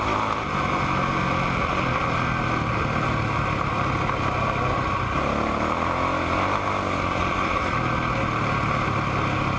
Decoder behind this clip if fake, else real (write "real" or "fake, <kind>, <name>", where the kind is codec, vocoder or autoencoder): real